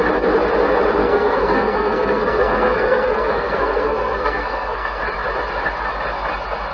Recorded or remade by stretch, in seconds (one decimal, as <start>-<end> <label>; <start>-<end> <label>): 0.0-1.0 recorded; 1.0-5.0 remade; 5.0-6.7 recorded